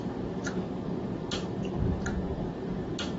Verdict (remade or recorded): remade